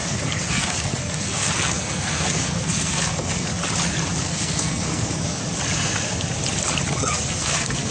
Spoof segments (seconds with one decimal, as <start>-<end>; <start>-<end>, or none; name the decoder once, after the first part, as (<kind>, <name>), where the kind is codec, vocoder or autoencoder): 0.0-3.5 (codec, SNAC); 4.2-5.4; 6.9-7.9